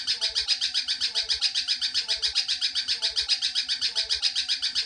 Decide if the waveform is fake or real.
fake